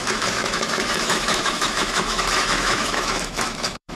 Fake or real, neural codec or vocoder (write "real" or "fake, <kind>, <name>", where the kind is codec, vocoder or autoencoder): fake, autoencoder, DAC-VAE